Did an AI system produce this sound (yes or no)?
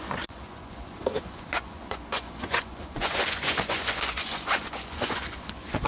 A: yes